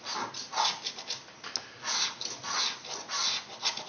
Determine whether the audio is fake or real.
real